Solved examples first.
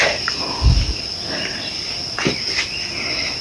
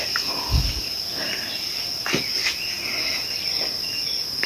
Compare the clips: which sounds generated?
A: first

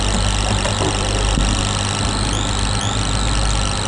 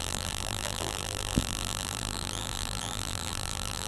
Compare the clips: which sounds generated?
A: second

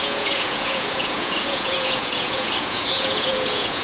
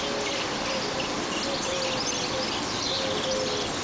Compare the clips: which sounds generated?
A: first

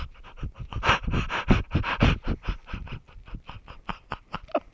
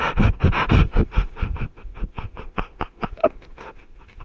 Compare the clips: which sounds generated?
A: second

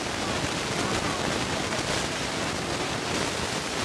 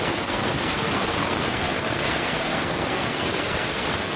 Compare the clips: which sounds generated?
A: second